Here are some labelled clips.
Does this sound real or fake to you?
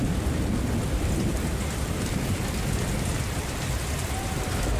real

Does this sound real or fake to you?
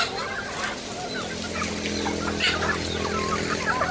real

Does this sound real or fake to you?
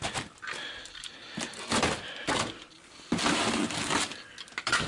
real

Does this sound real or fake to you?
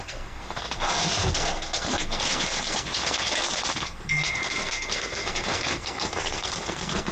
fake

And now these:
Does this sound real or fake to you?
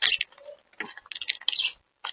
real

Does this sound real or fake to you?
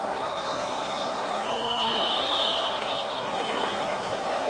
fake